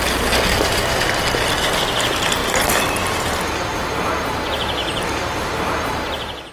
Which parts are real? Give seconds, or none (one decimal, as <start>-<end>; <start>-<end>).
0.0-4.8; 5.8-6.5